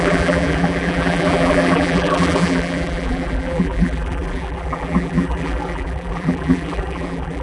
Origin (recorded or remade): remade